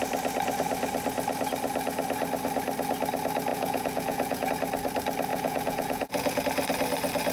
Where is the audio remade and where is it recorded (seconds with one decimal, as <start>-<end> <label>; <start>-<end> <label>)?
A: 0.0-3.5 recorded; 3.5-4.5 remade; 4.5-5.3 recorded; 5.3-6.4 remade; 6.4-7.3 recorded

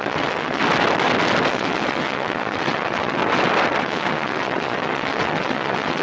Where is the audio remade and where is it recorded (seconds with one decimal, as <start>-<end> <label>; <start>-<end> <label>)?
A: 0.0-0.6 remade; 0.6-1.5 recorded; 1.5-3.2 remade; 3.2-3.8 recorded; 3.8-6.0 remade

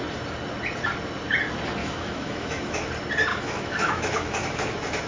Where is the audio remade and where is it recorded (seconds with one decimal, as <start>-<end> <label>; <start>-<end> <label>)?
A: 0.0-1.8 recorded; 1.8-2.9 remade; 2.9-3.3 recorded; 3.3-5.1 remade